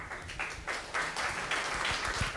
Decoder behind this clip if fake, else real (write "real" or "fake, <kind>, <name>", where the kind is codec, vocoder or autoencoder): real